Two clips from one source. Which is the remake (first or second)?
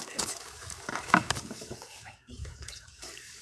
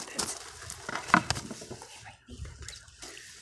first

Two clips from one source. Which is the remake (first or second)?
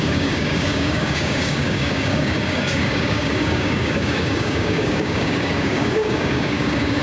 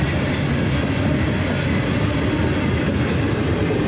first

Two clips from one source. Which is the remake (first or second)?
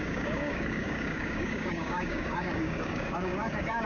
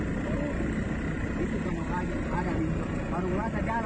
first